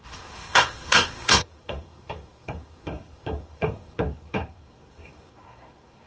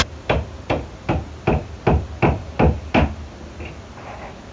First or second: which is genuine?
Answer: second